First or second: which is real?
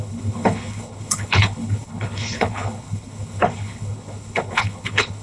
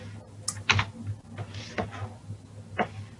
second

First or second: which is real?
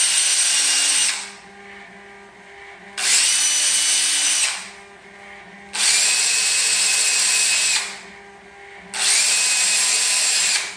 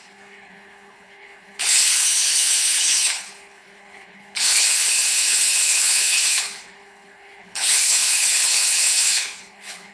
first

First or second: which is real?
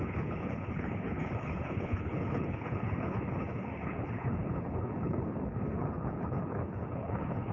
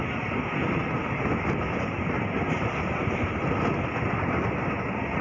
second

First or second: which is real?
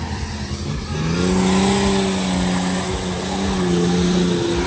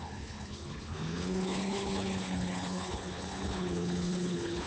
first